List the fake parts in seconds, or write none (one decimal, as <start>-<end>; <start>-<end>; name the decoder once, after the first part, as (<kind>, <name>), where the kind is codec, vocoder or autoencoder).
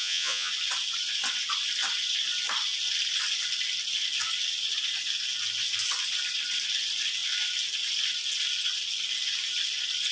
0.0-0.5 (vocoder, Vocos)